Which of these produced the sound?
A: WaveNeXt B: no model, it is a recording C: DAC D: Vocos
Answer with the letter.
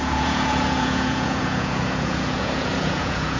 D